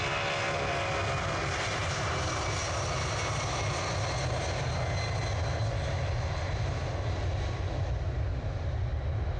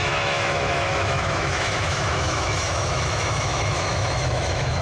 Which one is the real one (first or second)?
first